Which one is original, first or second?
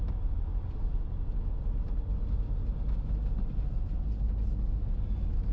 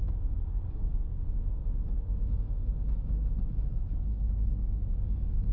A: first